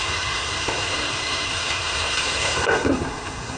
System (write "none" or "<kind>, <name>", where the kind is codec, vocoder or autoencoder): codec, SNAC